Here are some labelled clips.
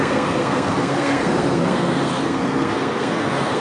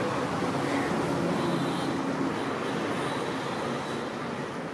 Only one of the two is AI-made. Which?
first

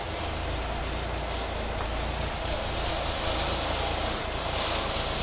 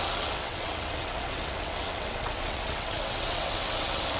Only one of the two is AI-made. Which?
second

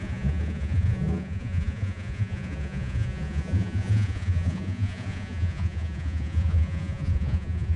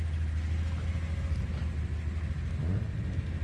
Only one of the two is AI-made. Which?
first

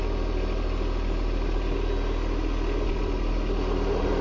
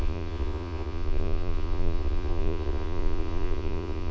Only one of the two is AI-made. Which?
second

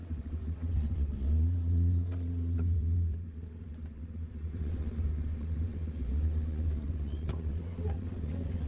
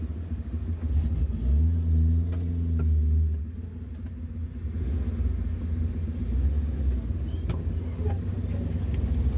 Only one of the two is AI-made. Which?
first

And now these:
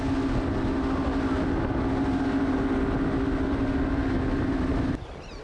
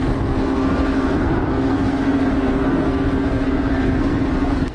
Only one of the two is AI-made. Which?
second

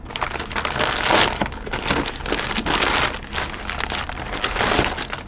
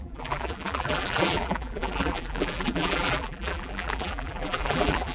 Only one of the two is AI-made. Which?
second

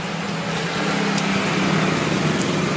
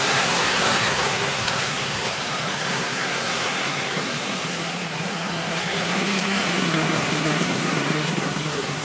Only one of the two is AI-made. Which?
second